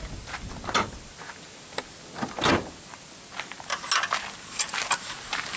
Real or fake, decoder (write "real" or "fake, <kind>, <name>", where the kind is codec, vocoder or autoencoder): real